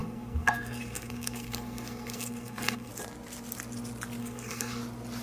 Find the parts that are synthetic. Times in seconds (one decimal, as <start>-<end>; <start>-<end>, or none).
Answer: 0.0-2.9; 4.2-4.8